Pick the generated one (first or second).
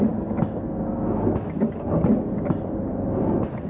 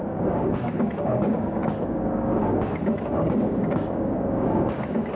second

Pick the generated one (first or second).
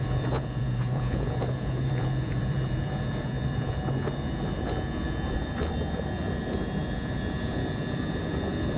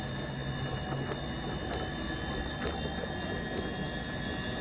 first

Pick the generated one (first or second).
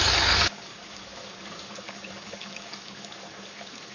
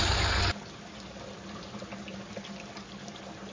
first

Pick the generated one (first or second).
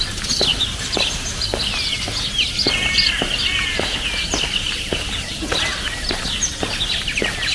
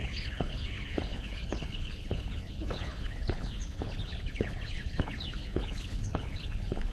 second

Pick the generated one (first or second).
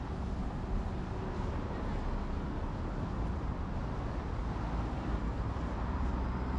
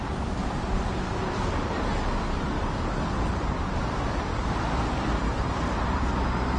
second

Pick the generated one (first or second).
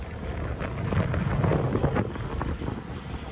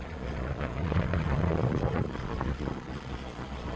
second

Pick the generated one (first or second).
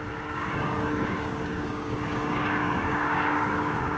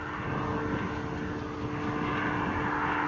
first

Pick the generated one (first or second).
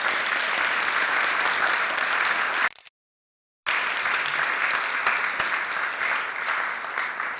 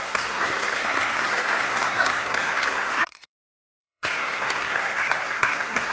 second